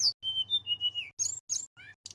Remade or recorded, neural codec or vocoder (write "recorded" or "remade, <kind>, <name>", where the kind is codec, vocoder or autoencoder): recorded